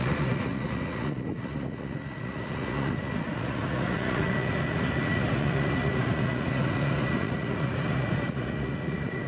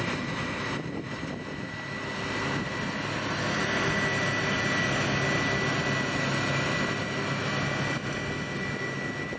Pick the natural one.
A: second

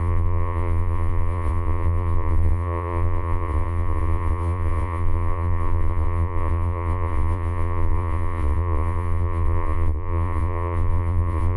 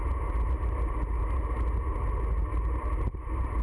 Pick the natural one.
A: second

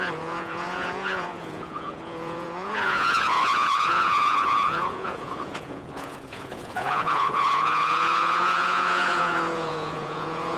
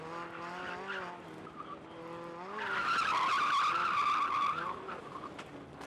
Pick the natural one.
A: second